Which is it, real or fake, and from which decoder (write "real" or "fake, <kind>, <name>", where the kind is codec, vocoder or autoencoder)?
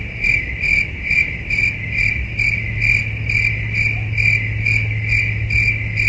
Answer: real